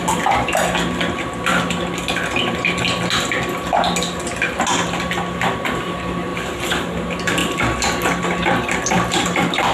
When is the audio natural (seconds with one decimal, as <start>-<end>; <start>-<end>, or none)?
0.0-6.3; 7.0-7.4; 8.2-9.7